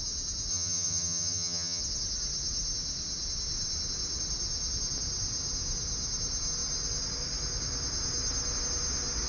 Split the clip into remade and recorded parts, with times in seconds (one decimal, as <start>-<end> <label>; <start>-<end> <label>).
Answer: 0.0-0.5 recorded; 0.5-1.8 remade; 1.8-9.3 recorded